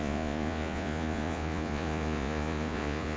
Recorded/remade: remade